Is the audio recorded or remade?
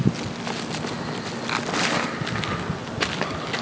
recorded